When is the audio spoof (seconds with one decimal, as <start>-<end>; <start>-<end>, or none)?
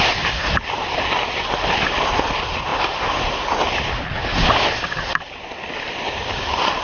none